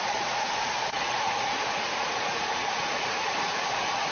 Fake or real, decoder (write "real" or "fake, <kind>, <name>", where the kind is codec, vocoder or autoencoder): fake, vocoder, Vocos